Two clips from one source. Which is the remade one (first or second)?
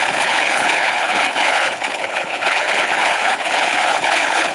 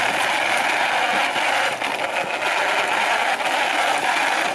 first